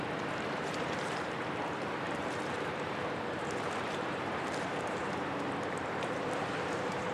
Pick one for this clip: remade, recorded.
remade